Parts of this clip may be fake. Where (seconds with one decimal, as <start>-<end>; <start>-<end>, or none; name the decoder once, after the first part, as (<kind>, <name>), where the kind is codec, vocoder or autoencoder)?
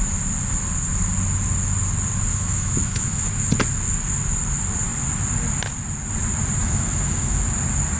2.3-3.3 (autoencoder, DAC-VAE); 6.6-7.4